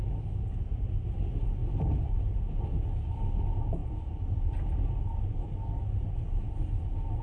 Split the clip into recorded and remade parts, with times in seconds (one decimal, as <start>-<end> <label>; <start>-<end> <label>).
0.0-1.6 recorded; 1.6-2.4 remade; 2.4-3.8 recorded; 3.8-7.2 remade